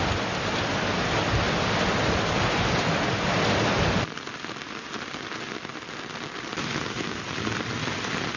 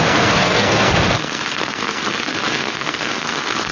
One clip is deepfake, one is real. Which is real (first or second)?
first